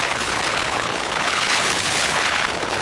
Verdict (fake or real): fake